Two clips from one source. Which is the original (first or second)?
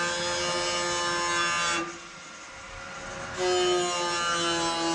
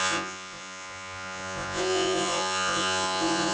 first